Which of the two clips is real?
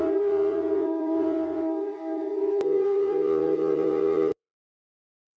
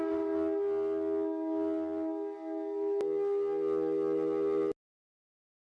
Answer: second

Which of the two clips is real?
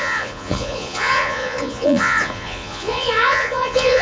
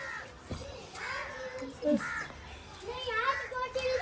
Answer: second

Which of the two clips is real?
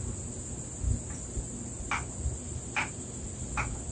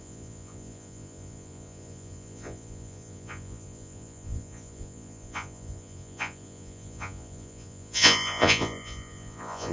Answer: first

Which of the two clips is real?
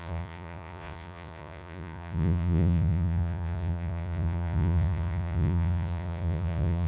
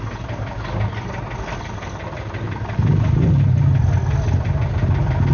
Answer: second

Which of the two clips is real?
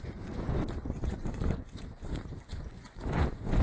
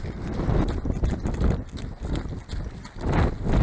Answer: second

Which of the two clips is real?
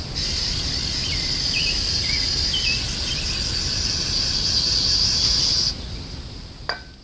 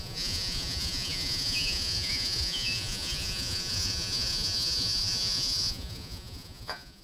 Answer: first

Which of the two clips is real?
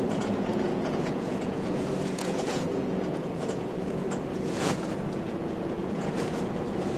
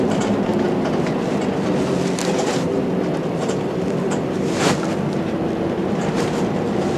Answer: second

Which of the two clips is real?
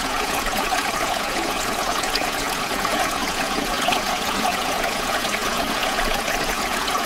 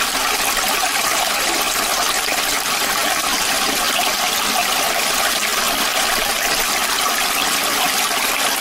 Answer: second